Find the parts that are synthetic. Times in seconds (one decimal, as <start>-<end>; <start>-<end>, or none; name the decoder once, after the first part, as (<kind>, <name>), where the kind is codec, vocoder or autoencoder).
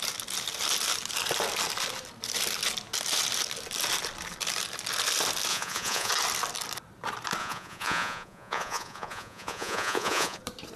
5.5-6.1 (vocoder, Vocos); 7.4-10.4